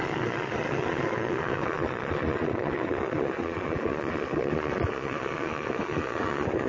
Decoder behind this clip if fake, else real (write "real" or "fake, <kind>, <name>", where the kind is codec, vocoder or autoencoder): fake, vocoder, Vocos